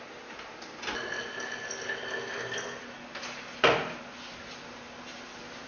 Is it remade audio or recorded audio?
recorded